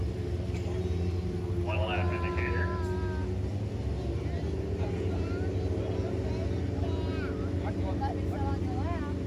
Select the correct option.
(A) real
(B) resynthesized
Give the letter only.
A